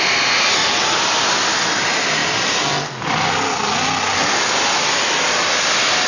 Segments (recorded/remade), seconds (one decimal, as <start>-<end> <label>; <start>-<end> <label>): 0.0-2.2 remade; 2.2-5.5 recorded; 5.5-6.1 remade